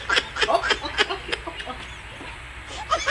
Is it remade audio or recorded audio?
recorded